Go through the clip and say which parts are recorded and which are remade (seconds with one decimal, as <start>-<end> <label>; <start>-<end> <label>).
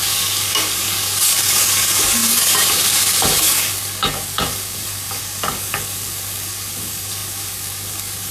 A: 0.0-8.3 remade